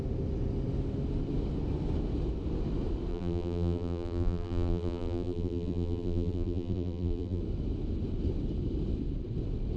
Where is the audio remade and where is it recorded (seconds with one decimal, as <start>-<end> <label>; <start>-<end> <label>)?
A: 0.0-3.1 recorded; 3.1-7.4 remade; 7.4-9.8 recorded